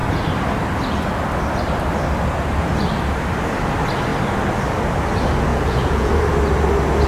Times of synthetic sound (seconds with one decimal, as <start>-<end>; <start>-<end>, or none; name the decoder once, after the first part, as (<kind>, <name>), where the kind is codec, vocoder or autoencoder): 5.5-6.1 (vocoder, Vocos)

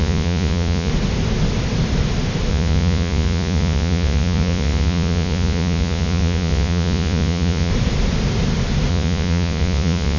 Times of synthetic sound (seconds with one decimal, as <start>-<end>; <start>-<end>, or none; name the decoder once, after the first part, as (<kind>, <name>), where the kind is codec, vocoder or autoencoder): 0.0-0.9 (vocoder, Vocos); 2.5-7.7; 8.9-10.2

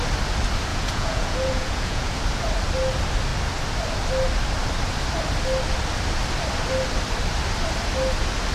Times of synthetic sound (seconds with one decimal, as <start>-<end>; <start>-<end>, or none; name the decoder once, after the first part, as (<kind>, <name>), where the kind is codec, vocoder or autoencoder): 0.7-2.2 (vocoder, Vocos)